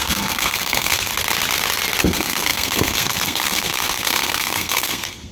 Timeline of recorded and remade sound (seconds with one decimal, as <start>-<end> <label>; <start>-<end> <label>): 0.0-1.1 remade; 1.1-2.0 recorded; 2.0-5.3 remade